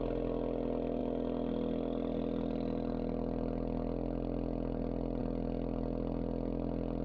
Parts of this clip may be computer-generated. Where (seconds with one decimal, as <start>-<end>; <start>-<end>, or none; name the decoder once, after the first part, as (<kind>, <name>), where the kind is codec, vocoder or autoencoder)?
none